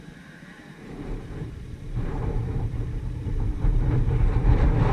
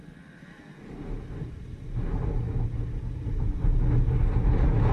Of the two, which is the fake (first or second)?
first